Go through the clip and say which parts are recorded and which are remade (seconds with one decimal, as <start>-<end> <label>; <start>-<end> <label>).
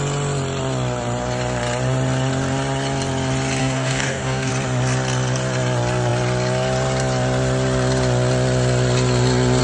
0.0-3.6 recorded; 3.6-4.5 remade; 4.5-9.6 recorded